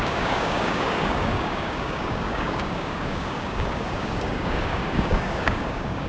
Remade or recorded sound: remade